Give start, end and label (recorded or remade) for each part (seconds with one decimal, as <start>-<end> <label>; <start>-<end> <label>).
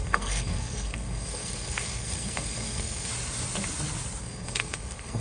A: 0.0-3.1 remade; 3.1-4.2 recorded; 4.2-5.2 remade